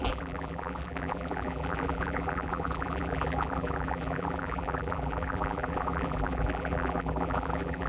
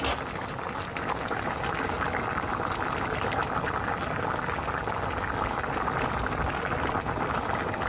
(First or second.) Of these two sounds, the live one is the second